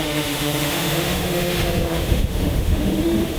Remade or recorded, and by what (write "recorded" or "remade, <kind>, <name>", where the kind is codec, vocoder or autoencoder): remade, autoencoder, DAC-VAE